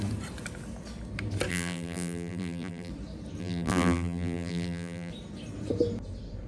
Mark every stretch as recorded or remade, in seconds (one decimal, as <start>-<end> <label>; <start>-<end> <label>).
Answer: 0.0-1.5 recorded; 1.5-2.9 remade; 2.9-3.4 recorded; 3.4-5.1 remade; 5.1-6.5 recorded